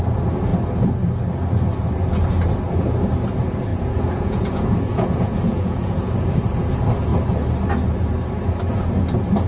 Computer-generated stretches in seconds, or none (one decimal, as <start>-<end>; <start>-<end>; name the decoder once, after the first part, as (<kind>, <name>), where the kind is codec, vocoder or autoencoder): 3.7-6.1 (vocoder, Vocos)